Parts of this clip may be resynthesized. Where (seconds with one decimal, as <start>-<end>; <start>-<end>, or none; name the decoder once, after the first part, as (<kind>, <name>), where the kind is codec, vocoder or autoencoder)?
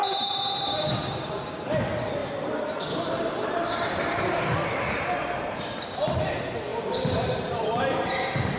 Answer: 2.2-6.3 (vocoder, BigVGAN v2); 6.7-7.8